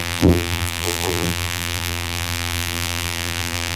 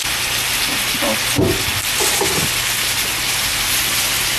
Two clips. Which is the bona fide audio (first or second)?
second